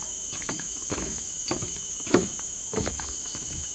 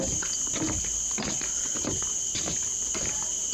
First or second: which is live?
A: second